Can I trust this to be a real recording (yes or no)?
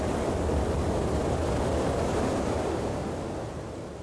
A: no